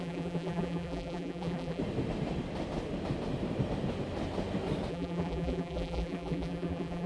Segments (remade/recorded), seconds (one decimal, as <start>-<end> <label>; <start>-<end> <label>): 0.0-1.8 remade; 1.8-4.9 recorded; 4.9-7.1 remade